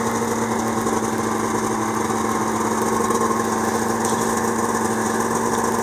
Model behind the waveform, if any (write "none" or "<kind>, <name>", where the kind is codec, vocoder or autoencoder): none